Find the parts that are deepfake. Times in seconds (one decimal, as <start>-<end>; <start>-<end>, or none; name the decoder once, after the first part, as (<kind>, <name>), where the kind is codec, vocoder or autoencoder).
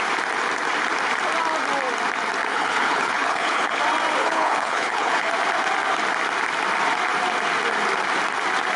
2.5-3.8 (codec, HILCodec); 4.2-5.3